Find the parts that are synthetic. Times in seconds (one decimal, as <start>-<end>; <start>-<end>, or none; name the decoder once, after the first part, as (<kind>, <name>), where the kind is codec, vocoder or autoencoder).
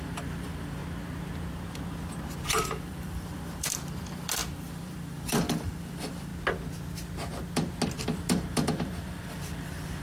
0.0-0.8 (vocoder, BigVGAN v2); 2.5-6.3; 8.0-10.0